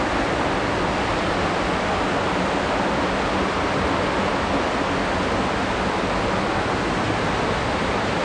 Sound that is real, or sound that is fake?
real